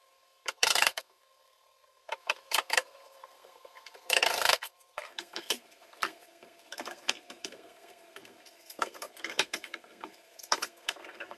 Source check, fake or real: fake